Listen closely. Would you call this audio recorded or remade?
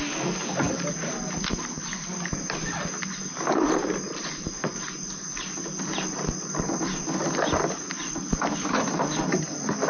recorded